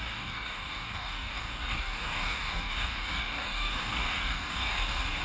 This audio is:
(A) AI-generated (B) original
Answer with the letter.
A